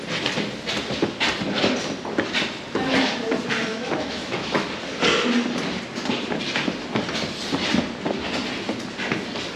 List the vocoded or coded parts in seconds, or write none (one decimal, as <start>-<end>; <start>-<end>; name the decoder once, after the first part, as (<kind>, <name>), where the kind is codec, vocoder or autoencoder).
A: 3.7-4.7 (autoencoder, DAC-VAE)